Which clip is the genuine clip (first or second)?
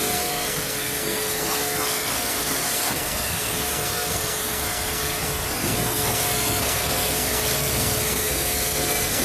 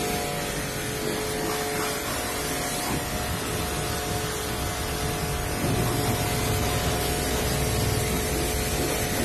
second